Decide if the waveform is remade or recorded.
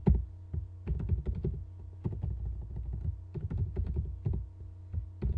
recorded